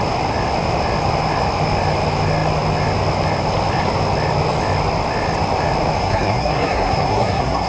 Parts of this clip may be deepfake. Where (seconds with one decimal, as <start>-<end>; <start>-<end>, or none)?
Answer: 6.0-7.7

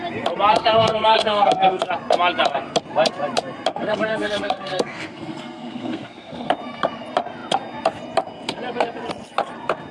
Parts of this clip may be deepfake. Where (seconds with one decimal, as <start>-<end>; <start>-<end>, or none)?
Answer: 0.5-1.8; 3.7-6.5

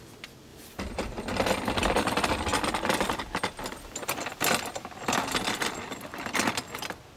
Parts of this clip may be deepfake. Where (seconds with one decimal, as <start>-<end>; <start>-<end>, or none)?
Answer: none